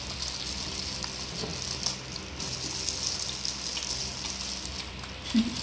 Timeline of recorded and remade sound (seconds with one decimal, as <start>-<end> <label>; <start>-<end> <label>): 0.0-5.6 recorded